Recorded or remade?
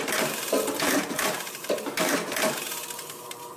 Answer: remade